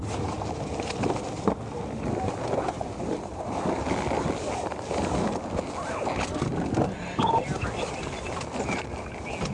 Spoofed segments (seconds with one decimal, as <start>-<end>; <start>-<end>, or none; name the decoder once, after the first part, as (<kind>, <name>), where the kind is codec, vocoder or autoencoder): none